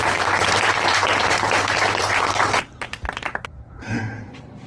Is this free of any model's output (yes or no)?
no